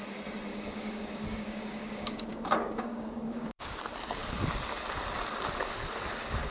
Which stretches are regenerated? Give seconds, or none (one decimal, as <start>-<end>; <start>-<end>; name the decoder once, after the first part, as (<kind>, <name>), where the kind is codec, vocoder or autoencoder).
0.5-3.8 (codec, DAC)